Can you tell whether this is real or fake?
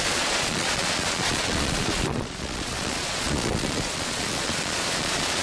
fake